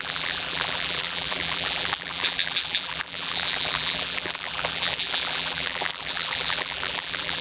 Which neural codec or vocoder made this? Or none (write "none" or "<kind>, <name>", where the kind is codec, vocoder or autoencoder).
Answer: vocoder, BigVGAN v2